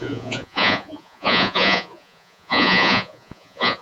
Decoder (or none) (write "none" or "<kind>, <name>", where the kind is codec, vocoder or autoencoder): vocoder, Vocos